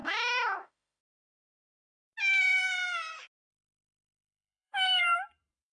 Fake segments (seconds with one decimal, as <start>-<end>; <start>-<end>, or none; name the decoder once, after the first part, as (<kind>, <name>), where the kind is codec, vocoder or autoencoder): 0.0-1.0 (autoencoder, DAC-VAE); 3.5-5.0